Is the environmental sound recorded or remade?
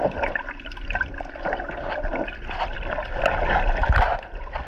recorded